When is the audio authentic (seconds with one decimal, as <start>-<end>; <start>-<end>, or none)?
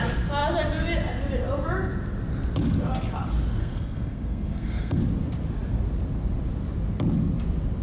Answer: 0.0-3.6; 5.0-7.8